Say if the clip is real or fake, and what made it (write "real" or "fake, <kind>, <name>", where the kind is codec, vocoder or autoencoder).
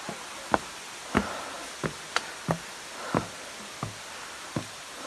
real